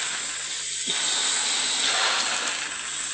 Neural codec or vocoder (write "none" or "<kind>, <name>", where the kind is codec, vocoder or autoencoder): none